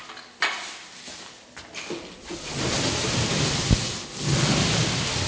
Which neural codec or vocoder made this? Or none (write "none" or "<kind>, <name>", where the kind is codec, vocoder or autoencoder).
none